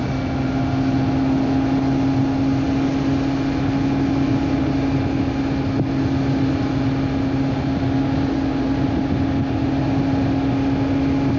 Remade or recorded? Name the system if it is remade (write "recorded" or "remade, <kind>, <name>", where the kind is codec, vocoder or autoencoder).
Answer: recorded